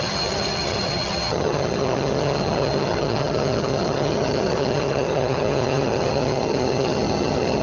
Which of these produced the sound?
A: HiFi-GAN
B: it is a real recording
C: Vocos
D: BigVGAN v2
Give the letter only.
A